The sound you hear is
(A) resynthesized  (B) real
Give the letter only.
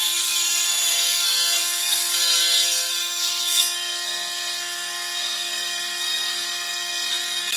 A